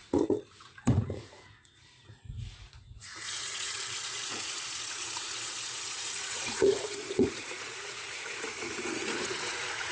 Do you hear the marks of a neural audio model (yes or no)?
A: yes